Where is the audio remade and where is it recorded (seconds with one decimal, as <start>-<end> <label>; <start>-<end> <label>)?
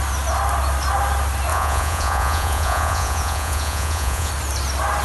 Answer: 0.0-1.5 recorded; 1.5-4.3 remade; 4.3-5.0 recorded